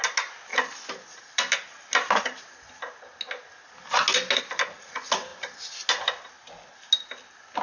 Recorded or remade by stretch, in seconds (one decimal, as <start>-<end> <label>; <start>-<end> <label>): 0.0-7.6 recorded